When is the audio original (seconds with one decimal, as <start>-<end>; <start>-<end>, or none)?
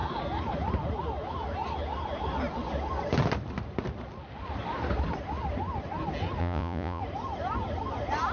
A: 0.0-6.4; 7.0-8.3